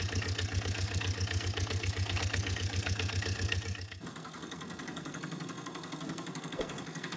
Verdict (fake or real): fake